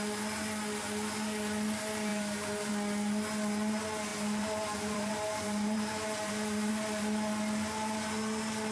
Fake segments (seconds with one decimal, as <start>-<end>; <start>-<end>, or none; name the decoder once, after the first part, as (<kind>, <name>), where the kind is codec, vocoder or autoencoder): 2.1-2.7 (vocoder, BigVGAN v2); 4.1-6.7